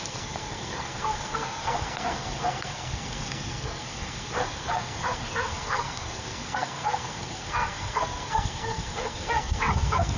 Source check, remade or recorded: remade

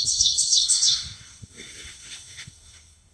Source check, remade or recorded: remade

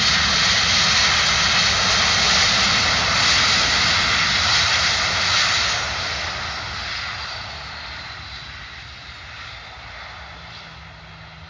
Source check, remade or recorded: recorded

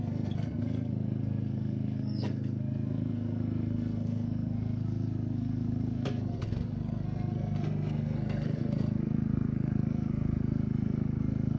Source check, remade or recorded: remade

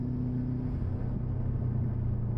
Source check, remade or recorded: recorded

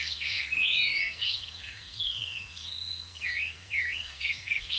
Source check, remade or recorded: remade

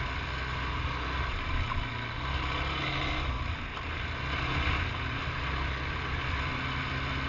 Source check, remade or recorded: recorded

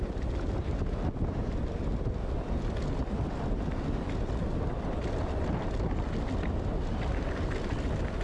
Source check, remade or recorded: recorded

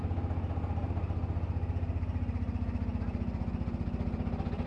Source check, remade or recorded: recorded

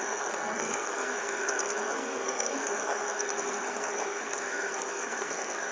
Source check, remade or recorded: remade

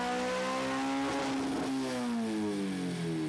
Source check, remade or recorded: recorded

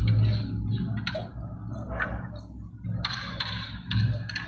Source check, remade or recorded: recorded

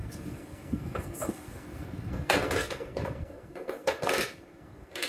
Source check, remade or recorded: remade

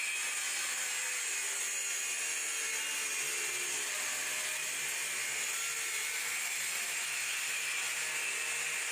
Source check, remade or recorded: recorded